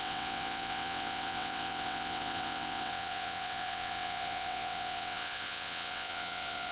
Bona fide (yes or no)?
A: no